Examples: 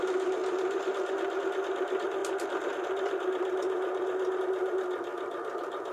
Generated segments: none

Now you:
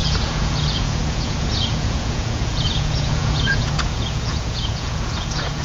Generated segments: 0.0-5.6 (vocoder, Vocos)